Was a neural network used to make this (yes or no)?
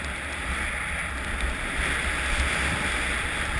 no